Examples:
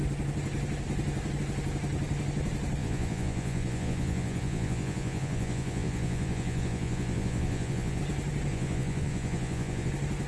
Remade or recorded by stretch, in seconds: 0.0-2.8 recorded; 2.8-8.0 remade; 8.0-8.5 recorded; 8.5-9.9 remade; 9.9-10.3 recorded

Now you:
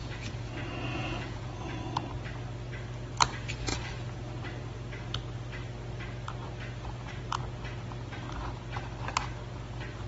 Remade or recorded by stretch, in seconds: 0.0-0.5 remade; 0.5-0.9 recorded; 0.9-1.8 remade; 1.8-10.1 recorded